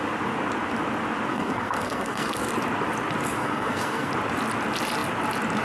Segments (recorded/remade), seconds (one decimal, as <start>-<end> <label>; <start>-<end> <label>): 0.0-1.3 recorded; 1.3-2.5 remade; 2.5-3.4 recorded; 3.4-4.1 remade; 4.1-5.6 recorded